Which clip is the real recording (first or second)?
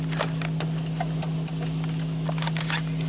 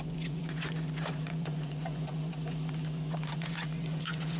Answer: first